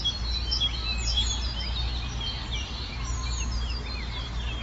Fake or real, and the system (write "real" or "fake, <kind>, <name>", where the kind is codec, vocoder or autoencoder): real